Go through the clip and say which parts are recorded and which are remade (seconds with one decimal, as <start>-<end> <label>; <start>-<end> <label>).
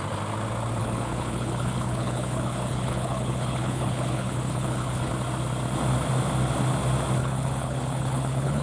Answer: 0.0-0.8 recorded; 0.8-5.1 remade; 5.1-7.2 recorded; 7.2-8.6 remade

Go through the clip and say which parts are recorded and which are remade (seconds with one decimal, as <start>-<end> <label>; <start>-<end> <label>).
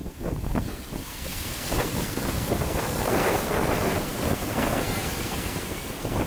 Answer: 0.0-6.3 remade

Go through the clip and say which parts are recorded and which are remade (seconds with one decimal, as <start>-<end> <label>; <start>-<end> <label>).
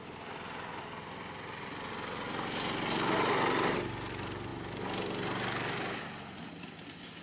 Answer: 0.0-7.2 recorded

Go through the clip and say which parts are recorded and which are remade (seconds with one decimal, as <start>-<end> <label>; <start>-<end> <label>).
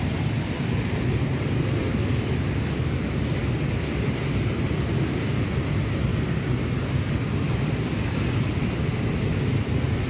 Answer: 0.0-10.1 recorded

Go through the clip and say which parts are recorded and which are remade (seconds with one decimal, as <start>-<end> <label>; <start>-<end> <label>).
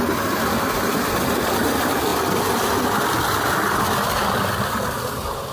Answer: 0.0-5.5 recorded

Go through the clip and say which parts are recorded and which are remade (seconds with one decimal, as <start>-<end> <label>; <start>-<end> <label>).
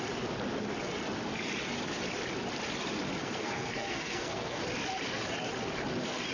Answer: 0.0-3.2 recorded; 3.2-4.6 remade; 4.6-6.3 recorded